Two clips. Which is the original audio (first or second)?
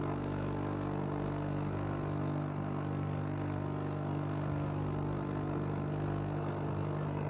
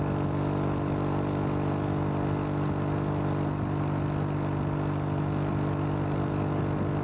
second